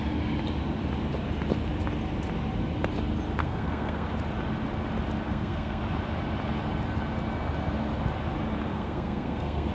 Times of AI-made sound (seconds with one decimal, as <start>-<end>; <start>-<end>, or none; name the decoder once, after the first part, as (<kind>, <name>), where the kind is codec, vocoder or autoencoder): 3.4-4.1 (codec, SNAC); 5.3-5.8; 8.7-9.7